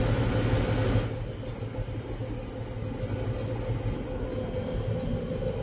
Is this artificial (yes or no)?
no